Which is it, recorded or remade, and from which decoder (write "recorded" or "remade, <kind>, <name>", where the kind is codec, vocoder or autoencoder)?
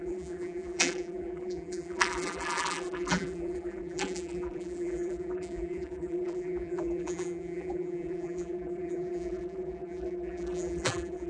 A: remade, vocoder, BigVGAN v2